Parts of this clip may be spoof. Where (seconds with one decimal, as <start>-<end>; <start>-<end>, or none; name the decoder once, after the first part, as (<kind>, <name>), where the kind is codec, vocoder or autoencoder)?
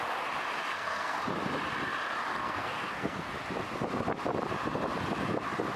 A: 0.7-1.2 (codec, SNAC); 2.3-3.3